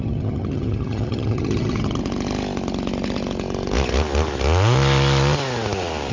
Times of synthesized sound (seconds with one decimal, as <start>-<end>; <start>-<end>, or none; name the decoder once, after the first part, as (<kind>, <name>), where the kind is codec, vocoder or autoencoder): 0.0-2.0 (vocoder, HiFi-GAN)